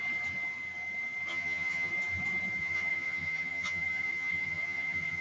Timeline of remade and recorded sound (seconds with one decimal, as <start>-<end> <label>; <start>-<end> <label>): 0.0-1.3 recorded; 1.3-1.9 remade; 1.9-2.6 recorded; 2.6-5.2 remade